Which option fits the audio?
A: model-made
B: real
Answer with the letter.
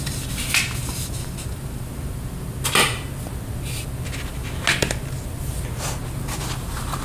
B